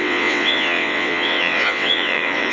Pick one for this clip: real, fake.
fake